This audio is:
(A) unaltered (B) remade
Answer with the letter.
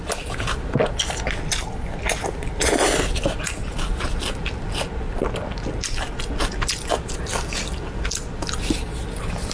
A